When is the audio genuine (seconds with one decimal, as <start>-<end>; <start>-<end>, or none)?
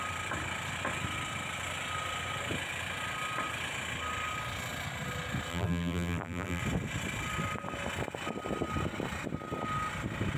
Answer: 0.0-5.5; 6.6-10.4